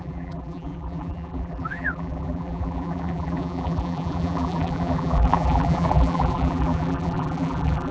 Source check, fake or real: fake